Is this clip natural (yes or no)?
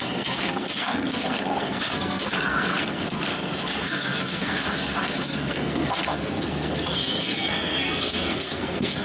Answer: no